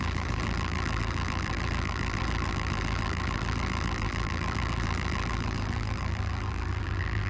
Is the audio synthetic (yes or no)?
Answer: yes